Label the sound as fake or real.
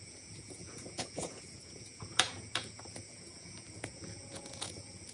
fake